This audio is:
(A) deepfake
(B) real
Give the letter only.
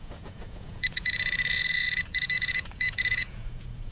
A